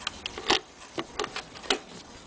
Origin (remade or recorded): recorded